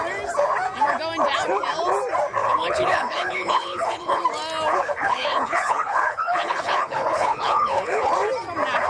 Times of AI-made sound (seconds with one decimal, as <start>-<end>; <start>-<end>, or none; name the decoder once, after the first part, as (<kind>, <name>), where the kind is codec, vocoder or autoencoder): 2.4-4.2 (codec, HILCodec); 4.7-8.1